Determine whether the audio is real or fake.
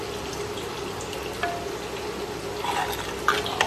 real